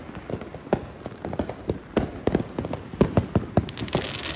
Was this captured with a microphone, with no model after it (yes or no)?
yes